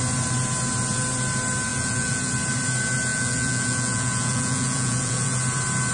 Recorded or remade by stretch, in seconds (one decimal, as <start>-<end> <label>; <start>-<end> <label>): 0.0-1.7 recorded; 1.7-2.3 remade; 2.3-3.1 recorded; 3.1-5.4 remade; 5.4-5.9 recorded